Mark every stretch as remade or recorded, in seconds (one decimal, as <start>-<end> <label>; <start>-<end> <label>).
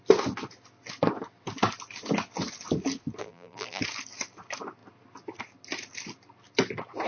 0.0-3.2 recorded; 3.2-3.8 remade; 3.8-7.1 recorded